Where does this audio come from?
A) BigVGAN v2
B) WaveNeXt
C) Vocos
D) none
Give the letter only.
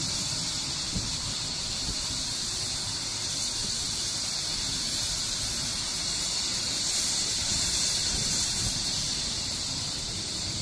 A